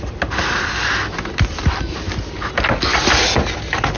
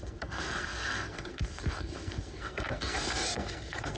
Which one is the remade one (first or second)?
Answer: second